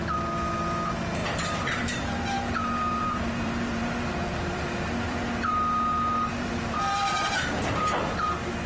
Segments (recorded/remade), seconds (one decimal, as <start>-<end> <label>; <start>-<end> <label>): 0.0-1.2 recorded; 1.2-5.2 remade; 5.2-6.3 recorded; 6.3-8.2 remade; 8.2-8.7 recorded